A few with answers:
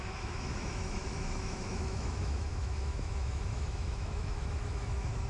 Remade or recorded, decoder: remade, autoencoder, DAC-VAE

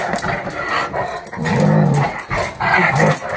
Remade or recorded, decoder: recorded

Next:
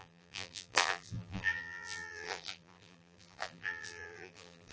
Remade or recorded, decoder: remade, vocoder, BigVGAN v2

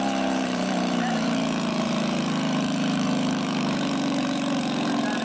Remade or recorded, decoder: remade, vocoder, BigVGAN v2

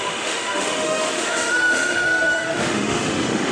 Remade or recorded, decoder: remade, autoencoder, DAC-VAE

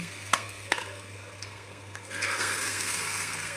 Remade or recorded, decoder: remade, codec, SNAC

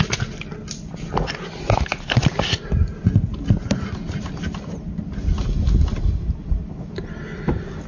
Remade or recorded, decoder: recorded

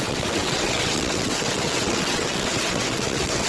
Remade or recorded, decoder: remade, vocoder, WaveNeXt